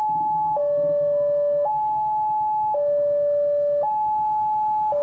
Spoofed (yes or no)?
no